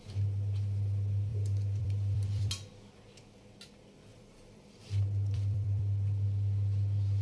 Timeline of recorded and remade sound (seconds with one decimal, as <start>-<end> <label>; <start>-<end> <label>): 0.0-1.3 recorded; 1.3-2.5 remade; 2.5-4.1 recorded; 4.1-5.8 remade; 5.8-7.2 recorded

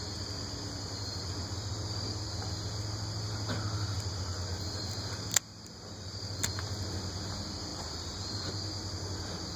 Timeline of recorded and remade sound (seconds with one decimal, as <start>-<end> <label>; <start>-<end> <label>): 0.0-7.7 recorded; 7.7-8.5 remade; 8.5-9.6 recorded

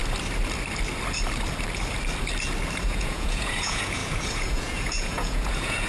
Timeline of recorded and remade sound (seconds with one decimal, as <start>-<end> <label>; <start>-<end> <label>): 0.0-2.8 recorded; 2.8-5.9 remade

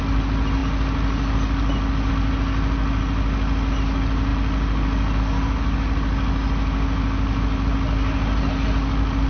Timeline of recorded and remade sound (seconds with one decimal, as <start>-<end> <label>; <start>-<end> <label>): 0.0-9.3 recorded